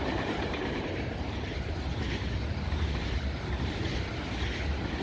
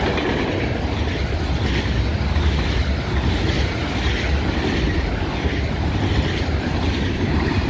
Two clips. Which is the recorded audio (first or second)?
second